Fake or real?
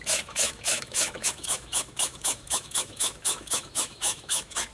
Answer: fake